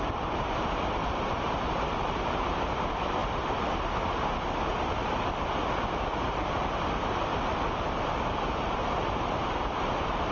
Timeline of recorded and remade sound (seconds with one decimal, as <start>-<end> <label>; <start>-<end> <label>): 0.0-2.7 remade; 2.7-3.2 recorded; 3.2-4.2 remade; 4.2-4.7 recorded; 4.7-5.5 remade; 5.5-7.3 recorded; 7.3-10.3 remade

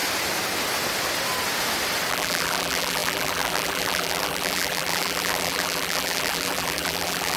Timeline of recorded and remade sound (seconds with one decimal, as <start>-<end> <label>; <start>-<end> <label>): 0.0-2.1 recorded; 2.1-7.4 remade

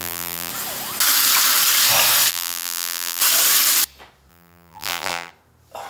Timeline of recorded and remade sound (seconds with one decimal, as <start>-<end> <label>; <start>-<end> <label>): 0.0-0.5 remade; 0.5-2.3 recorded; 2.3-3.2 remade; 3.2-4.3 recorded; 4.3-5.3 remade; 5.3-5.9 recorded

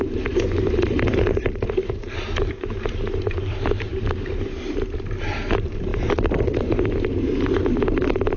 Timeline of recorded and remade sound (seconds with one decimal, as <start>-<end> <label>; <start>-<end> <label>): 0.0-8.4 remade

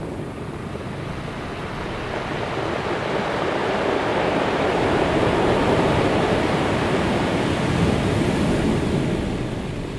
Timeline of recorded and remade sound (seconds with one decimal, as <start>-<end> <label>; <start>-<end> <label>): 0.0-3.6 recorded; 3.6-7.5 remade; 7.5-10.0 recorded

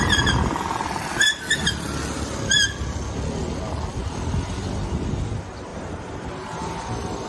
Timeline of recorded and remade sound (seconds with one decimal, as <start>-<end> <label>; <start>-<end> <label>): 0.0-5.7 recorded; 5.7-6.3 remade; 6.3-7.3 recorded

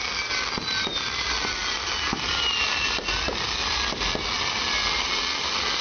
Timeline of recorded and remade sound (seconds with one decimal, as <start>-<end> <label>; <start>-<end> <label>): 0.0-5.8 recorded